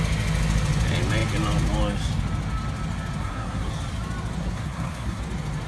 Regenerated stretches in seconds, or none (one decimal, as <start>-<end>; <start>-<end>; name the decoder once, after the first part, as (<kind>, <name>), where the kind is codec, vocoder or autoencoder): 3.2-3.7 (codec, SNAC); 4.4-5.2